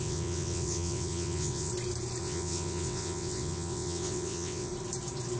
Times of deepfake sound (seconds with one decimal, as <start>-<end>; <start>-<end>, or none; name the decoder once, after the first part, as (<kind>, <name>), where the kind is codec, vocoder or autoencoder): 0.0-1.7 (vocoder, WaveNeXt); 2.2-4.7